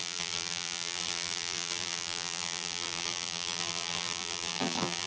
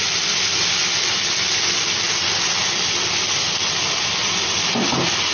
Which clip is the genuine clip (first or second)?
second